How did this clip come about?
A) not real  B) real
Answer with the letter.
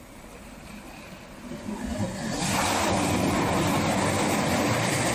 B